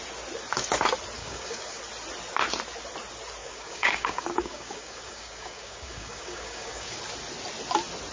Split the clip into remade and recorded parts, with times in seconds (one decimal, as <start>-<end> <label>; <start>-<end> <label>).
0.0-1.2 recorded; 1.2-1.8 remade; 1.8-3.4 recorded; 3.4-7.0 remade; 7.0-8.1 recorded